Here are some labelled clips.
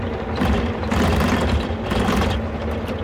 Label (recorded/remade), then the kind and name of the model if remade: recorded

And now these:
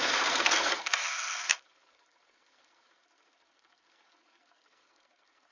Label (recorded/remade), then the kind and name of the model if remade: remade, codec, SNAC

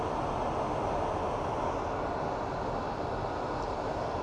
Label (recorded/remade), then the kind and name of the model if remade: recorded